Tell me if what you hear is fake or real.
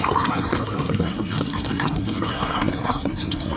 fake